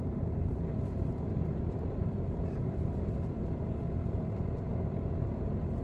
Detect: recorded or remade remade